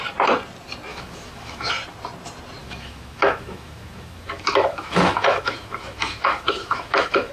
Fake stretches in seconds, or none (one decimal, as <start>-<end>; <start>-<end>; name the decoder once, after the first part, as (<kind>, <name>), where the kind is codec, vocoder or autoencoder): 0.9-1.7 (autoencoder, DAC-VAE); 2.6-7.3